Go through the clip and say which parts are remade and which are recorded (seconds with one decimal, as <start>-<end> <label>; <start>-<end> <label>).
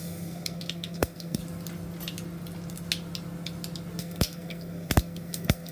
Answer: 0.0-1.4 remade; 1.4-4.0 recorded; 4.0-5.7 remade